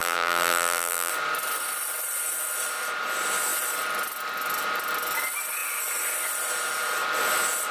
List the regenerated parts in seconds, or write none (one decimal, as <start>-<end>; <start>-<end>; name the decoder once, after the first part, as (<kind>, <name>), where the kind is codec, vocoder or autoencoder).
0.0-1.1 (vocoder, BigVGAN v2)